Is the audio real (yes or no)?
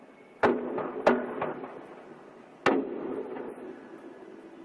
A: yes